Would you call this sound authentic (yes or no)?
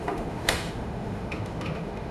no